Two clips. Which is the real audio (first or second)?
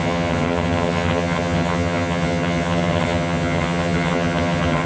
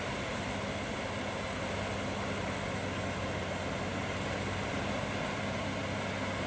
second